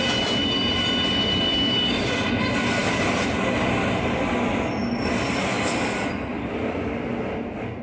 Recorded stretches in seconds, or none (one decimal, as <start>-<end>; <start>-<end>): 0.0-1.5; 2.3-7.8